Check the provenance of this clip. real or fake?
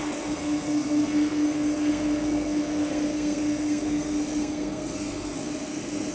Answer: fake